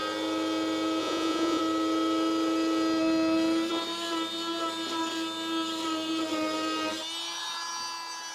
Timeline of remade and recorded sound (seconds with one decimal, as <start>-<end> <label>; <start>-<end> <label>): 0.0-1.0 recorded; 1.0-1.6 remade; 1.6-8.3 recorded